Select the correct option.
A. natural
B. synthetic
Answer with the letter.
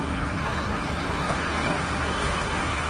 B